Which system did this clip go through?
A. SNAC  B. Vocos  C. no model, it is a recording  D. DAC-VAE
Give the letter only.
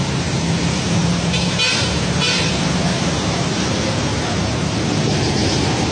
C